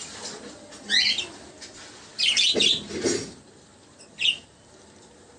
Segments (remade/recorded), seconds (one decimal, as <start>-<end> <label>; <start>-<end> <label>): 0.0-5.4 recorded